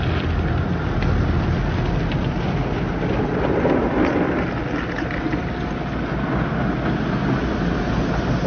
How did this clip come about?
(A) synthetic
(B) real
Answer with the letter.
B